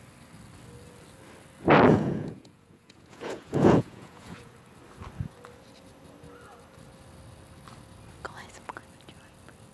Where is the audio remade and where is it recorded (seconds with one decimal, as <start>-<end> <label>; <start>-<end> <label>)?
0.0-1.9 recorded; 1.9-4.5 remade; 4.5-9.7 recorded